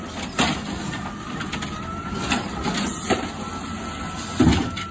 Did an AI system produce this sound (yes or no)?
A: no